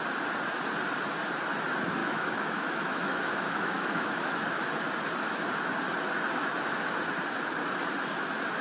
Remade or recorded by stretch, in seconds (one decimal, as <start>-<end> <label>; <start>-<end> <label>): 0.0-2.0 recorded; 2.0-4.6 remade; 4.6-8.6 recorded